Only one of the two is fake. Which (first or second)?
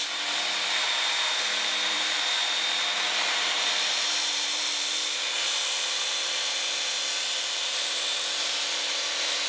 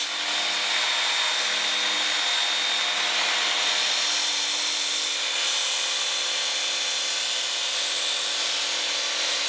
first